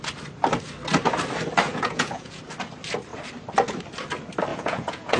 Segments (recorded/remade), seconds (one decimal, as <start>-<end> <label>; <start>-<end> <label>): 0.0-1.7 recorded; 1.7-2.4 remade; 2.4-4.5 recorded; 4.5-5.2 remade